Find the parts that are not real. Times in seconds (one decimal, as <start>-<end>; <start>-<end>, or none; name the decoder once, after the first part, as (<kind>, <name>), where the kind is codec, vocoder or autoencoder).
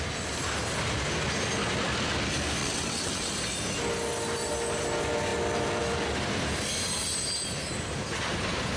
2.6-3.3 (vocoder, WaveNeXt)